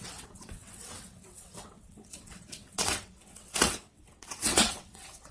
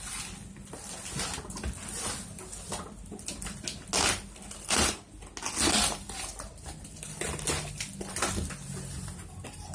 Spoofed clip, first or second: first